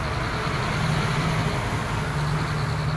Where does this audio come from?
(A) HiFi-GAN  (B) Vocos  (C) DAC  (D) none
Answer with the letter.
D